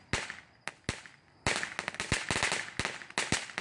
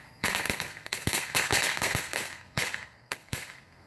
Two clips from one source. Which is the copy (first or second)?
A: second